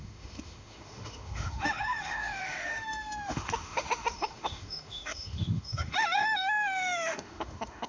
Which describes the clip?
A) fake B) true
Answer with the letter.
A